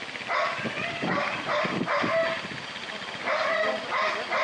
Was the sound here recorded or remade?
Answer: recorded